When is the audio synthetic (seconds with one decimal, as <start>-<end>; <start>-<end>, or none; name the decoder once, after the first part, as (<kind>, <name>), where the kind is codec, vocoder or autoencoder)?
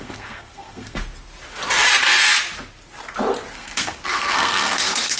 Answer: 0.0-1.0 (codec, SNAC); 3.5-5.2